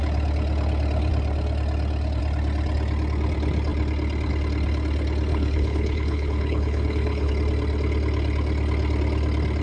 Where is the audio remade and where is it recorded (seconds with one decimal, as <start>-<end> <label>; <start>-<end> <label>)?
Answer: 0.0-5.3 recorded; 5.3-7.3 remade; 7.3-9.6 recorded